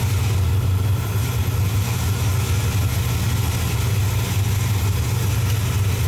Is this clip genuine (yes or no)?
yes